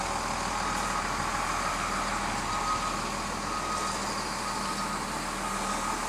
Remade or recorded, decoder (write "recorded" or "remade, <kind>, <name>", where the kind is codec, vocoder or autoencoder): recorded